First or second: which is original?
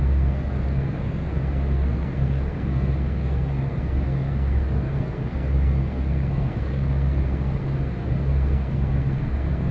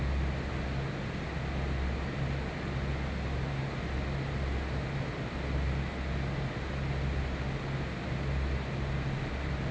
second